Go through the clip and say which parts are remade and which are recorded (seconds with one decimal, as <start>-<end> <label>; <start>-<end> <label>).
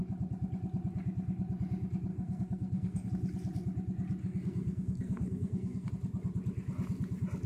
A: 0.0-2.1 recorded; 2.1-3.1 remade; 3.1-4.2 recorded; 4.2-5.9 remade; 5.9-7.5 recorded